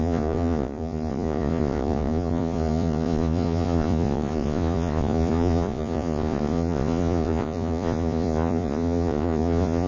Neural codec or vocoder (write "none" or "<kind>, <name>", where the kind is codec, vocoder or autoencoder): vocoder, Vocos